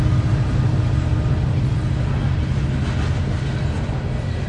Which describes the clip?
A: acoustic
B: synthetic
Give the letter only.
A